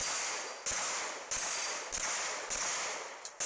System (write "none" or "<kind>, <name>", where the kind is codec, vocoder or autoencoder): none